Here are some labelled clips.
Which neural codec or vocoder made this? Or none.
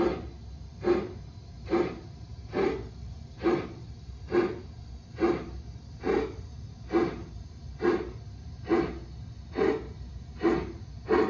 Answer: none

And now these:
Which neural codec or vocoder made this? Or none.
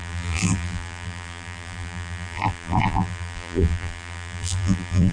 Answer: vocoder, BigVGAN v2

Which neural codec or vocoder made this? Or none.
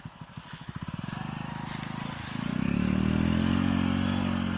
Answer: none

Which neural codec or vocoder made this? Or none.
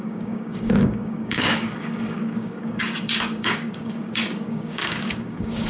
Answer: codec, DAC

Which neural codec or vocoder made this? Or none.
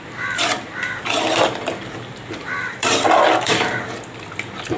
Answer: vocoder, BigVGAN v2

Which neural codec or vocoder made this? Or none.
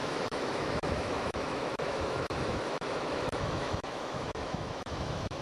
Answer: autoencoder, DAC-VAE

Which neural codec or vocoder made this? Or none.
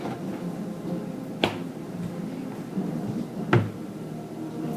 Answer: none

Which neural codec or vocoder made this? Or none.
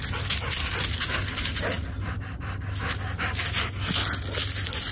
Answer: none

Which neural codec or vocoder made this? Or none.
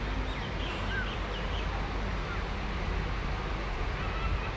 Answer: none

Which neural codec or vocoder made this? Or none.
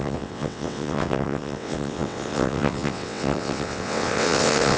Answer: vocoder, WaveNeXt